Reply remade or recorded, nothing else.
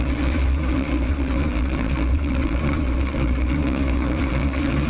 remade